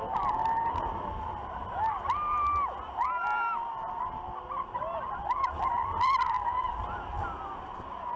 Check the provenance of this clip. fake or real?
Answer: real